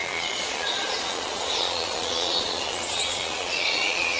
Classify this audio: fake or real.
fake